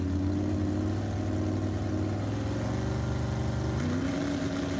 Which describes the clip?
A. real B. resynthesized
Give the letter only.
A